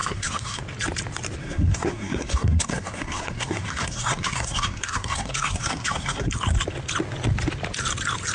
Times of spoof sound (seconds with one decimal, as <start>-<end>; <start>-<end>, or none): 0.0-0.6; 1.4-6.3